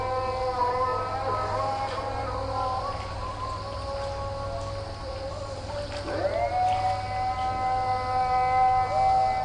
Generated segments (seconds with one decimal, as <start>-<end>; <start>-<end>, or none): none